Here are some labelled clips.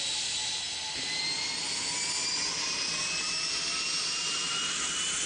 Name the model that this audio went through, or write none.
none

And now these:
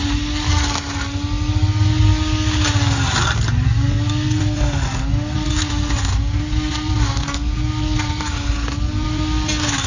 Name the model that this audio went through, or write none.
none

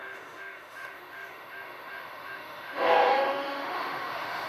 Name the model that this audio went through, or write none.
autoencoder, DAC-VAE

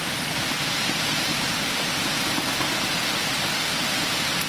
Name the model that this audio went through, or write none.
none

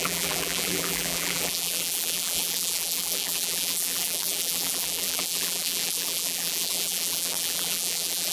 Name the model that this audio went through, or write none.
vocoder, BigVGAN v2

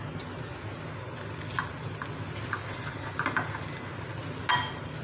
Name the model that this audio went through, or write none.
none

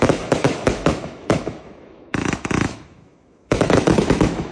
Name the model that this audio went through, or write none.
autoencoder, DAC-VAE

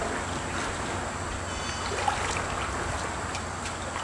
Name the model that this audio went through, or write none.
none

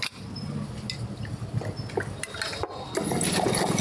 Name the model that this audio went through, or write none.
none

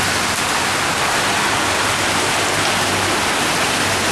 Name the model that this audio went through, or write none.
none